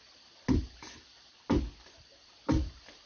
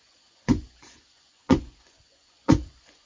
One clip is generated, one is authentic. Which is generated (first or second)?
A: second